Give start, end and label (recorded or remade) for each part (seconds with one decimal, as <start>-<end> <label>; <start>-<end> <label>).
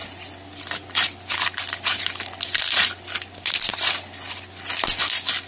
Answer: 0.0-5.5 recorded